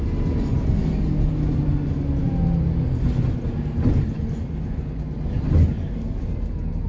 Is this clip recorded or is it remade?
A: recorded